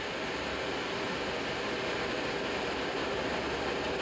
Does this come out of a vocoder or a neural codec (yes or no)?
no